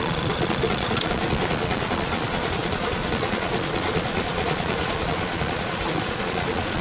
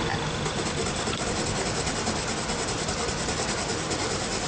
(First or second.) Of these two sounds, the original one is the second